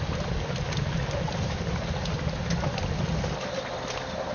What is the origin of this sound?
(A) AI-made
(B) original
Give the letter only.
B